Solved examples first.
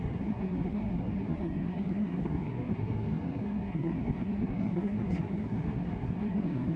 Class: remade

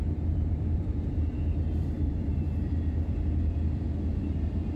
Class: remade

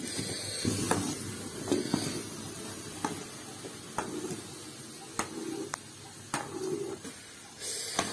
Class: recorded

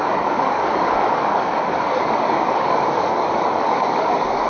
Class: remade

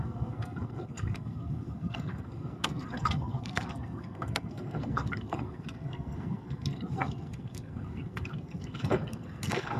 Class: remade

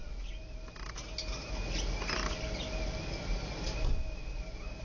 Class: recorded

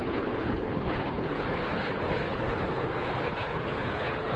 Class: remade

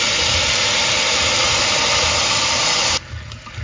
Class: recorded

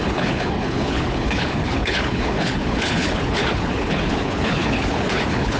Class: remade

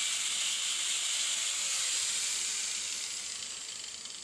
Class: recorded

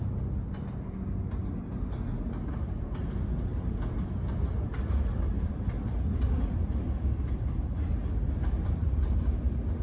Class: recorded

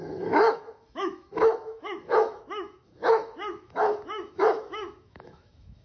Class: remade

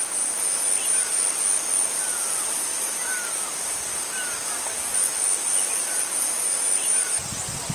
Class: recorded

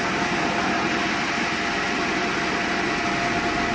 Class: recorded